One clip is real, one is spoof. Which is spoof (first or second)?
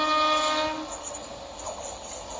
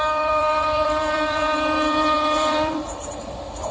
second